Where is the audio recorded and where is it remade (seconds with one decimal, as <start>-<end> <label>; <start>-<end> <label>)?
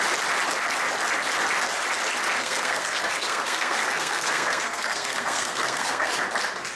0.0-2.4 recorded; 2.4-6.1 remade; 6.1-6.8 recorded